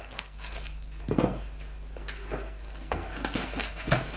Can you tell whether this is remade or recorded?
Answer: remade